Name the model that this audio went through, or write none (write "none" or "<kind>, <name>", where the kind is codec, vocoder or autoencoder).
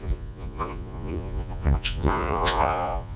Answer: vocoder, Vocos